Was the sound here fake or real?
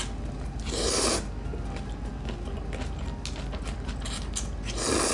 real